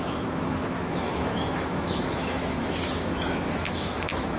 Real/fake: fake